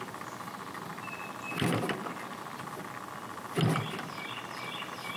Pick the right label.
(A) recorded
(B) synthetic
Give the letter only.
A